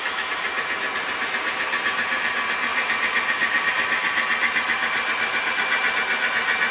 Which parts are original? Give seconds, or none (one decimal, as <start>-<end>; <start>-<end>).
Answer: 0.0-2.7; 3.7-4.8; 5.5-6.7